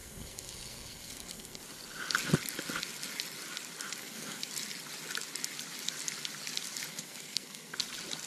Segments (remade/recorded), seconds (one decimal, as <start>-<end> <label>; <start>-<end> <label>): 0.0-1.6 remade; 1.6-4.0 recorded; 4.0-4.5 remade; 4.5-6.9 recorded; 6.9-7.8 remade; 7.8-8.3 recorded